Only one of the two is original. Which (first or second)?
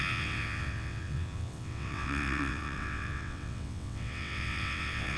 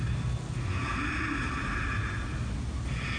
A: second